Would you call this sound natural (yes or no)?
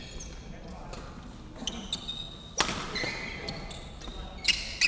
yes